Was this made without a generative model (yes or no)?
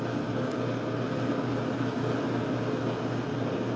yes